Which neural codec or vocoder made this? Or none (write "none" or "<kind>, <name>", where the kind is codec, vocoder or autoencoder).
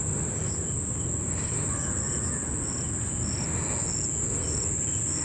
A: none